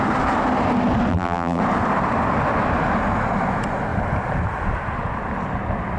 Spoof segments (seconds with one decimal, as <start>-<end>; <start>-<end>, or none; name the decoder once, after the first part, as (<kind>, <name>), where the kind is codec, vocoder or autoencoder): 1.1-1.6 (vocoder, BigVGAN v2)